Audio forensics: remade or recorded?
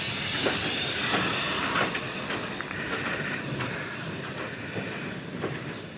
recorded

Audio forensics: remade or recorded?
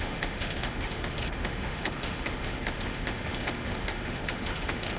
remade